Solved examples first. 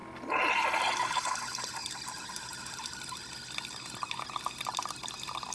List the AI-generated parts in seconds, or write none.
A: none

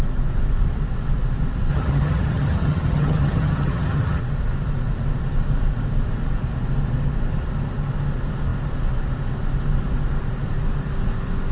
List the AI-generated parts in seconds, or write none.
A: 1.7-4.2 (vocoder, HiFi-GAN)

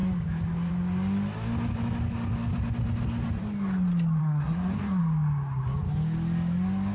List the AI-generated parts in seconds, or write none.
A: 4.2-5.0 (codec, SNAC)

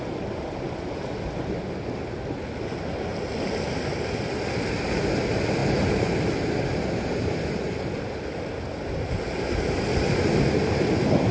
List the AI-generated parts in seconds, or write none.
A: none

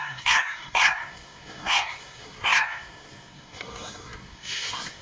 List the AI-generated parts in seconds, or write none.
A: 0.0-5.0 (codec, SNAC)

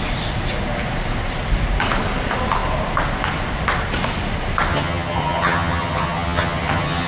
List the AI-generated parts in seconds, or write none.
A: 4.7-7.1 (vocoder, HiFi-GAN)

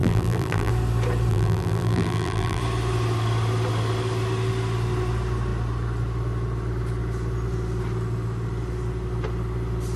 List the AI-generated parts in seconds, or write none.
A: 0.0-0.7 (vocoder, BigVGAN v2); 1.3-2.6

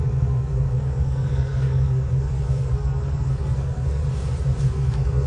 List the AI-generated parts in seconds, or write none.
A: 0.0-4.0 (codec, SNAC); 4.6-5.3